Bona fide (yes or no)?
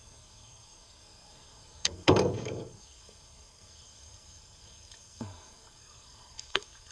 no